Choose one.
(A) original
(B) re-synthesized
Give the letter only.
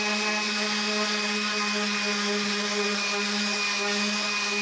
A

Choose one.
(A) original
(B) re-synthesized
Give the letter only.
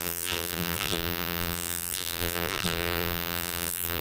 B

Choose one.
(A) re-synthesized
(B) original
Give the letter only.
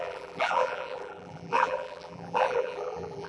A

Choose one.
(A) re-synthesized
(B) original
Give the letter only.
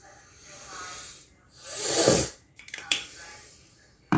A